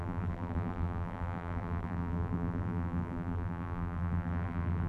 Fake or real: fake